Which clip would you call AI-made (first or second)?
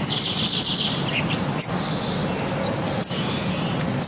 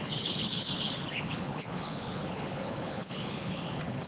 second